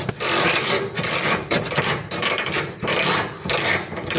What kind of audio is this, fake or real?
real